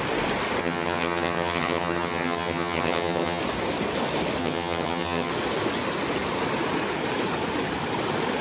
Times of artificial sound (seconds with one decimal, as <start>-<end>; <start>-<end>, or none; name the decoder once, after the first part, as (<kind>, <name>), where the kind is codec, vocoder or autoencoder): 0.6-3.4 (vocoder, HiFi-GAN); 4.4-5.3